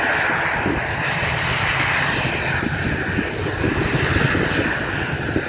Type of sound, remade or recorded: recorded